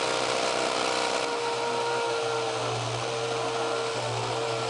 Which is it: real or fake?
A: real